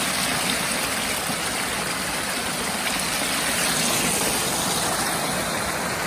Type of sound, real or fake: real